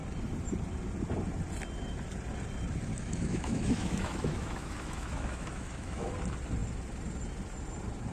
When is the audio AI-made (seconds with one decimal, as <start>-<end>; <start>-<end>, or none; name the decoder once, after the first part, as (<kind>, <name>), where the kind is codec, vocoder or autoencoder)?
2.9-6.1 (autoencoder, DAC-VAE)